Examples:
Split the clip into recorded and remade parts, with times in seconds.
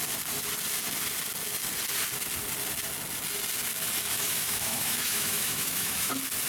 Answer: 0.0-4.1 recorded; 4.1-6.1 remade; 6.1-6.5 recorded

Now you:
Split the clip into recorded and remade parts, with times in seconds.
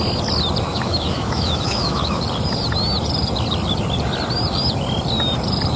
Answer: 0.0-0.7 recorded; 0.7-2.2 remade; 2.2-5.8 recorded